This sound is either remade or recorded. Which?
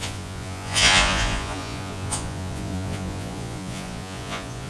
remade